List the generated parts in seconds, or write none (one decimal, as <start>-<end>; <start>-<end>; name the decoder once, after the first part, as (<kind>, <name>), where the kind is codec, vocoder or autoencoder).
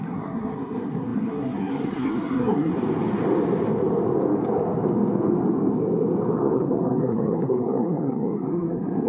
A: 0.0-2.7 (codec, SNAC); 6.3-9.1